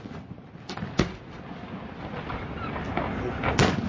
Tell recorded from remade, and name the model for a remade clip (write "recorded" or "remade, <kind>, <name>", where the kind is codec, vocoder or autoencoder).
recorded